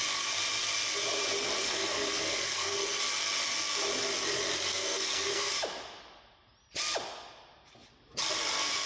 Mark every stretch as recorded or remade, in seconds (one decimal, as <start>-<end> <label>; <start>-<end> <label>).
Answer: 0.0-1.6 recorded; 1.6-3.0 remade; 3.0-4.7 recorded; 4.7-5.5 remade; 5.5-8.9 recorded